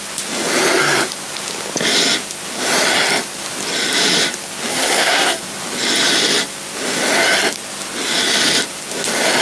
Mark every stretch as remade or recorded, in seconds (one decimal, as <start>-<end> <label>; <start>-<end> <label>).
0.0-4.7 recorded; 4.7-5.4 remade; 5.4-9.4 recorded